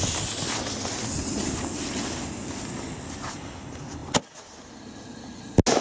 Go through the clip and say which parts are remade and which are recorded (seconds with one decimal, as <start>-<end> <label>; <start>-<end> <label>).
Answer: 0.0-5.8 recorded